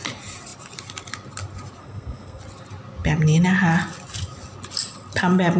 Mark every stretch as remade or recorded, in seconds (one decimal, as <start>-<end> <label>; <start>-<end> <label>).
0.0-1.8 recorded; 1.8-2.4 remade; 2.4-5.6 recorded